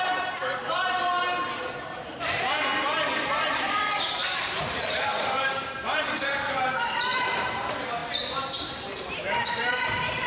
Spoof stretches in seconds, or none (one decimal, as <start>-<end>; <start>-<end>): 0.0-10.3

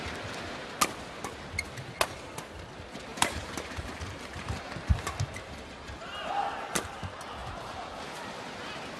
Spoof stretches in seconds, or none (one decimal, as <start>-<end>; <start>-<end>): 3.1-4.7; 7.4-8.4

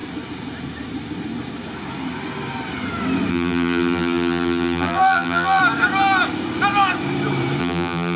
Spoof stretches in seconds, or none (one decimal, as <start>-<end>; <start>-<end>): 3.3-5.6; 7.6-8.2

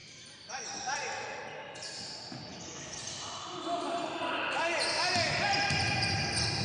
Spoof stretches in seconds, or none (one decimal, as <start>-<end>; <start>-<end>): 0.0-0.6; 2.5-4.3

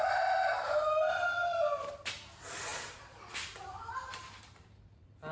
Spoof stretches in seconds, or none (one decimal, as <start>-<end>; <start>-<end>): 1.4-1.9; 2.7-5.3

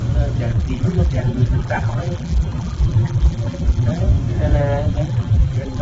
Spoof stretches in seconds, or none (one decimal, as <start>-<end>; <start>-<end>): 0.5-4.0; 4.9-5.8